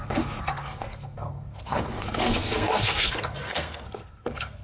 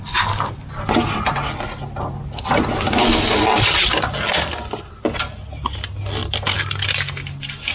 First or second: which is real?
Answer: second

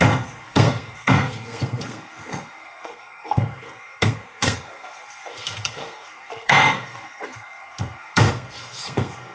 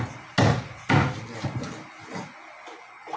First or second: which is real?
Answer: second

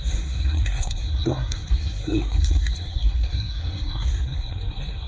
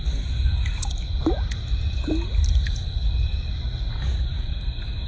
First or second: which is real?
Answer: second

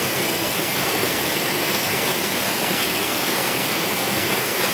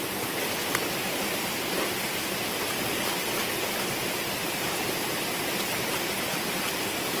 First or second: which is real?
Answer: second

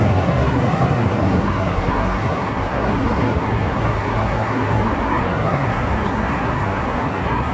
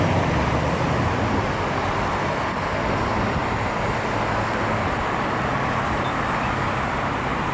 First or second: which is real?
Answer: second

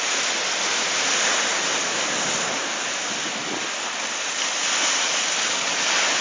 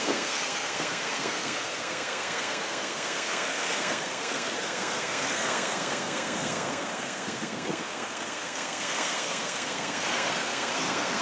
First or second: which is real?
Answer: first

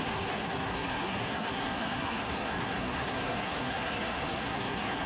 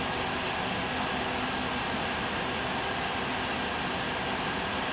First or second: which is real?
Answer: second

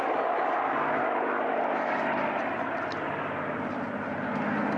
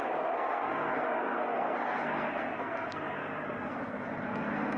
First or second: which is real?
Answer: first